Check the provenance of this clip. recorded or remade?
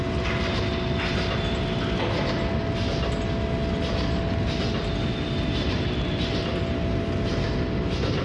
recorded